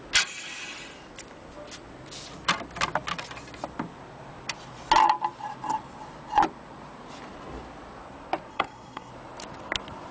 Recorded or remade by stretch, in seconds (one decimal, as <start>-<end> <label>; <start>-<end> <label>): 0.0-8.5 recorded; 8.5-9.1 remade; 9.1-10.1 recorded